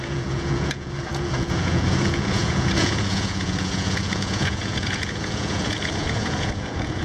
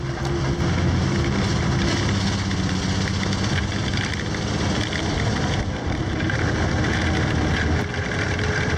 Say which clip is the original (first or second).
second